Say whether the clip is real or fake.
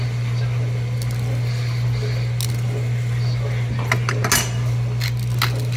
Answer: real